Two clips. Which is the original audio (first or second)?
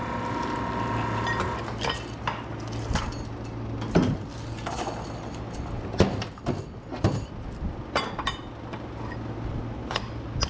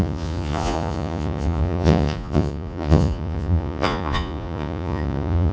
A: first